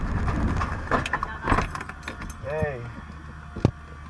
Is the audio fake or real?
real